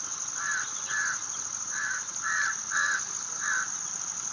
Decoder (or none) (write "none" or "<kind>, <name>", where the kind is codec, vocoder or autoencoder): none